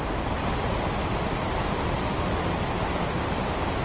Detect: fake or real real